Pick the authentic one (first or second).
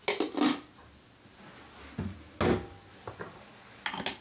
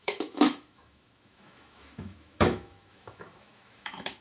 first